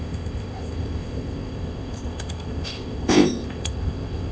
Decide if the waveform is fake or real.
fake